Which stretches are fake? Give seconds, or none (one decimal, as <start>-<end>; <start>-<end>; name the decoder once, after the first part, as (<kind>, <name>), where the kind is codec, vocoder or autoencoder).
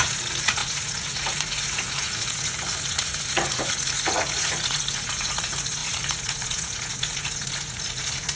0.0-8.4 (vocoder, Vocos)